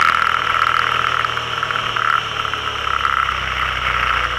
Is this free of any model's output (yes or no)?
yes